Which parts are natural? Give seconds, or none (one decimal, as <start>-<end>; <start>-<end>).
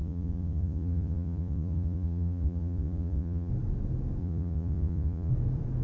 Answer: 3.5-4.2; 5.3-5.8